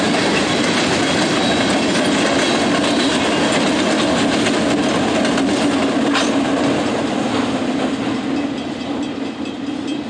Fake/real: real